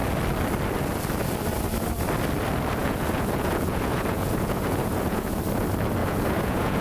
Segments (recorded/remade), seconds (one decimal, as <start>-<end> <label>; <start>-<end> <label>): 0.0-2.8 recorded; 2.8-5.4 remade; 5.4-6.0 recorded; 6.0-6.8 remade

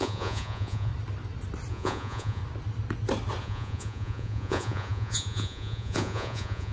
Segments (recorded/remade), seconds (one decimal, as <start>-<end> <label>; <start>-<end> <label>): 0.0-0.9 remade; 0.9-1.7 recorded; 1.7-2.4 remade; 2.4-3.4 recorded; 3.4-6.7 remade

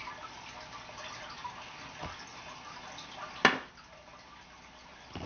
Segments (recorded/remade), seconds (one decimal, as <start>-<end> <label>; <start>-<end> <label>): 0.0-5.3 recorded

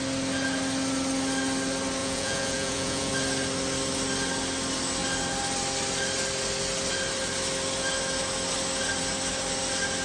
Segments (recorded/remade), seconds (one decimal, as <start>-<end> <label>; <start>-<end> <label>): 0.0-2.0 recorded; 2.0-3.1 remade; 3.1-10.0 recorded